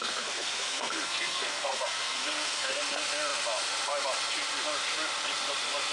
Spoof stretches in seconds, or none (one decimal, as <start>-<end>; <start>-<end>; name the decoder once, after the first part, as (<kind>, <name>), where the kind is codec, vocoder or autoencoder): 0.0-2.8 (codec, SNAC)